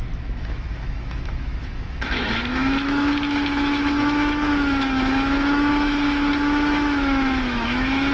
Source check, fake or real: fake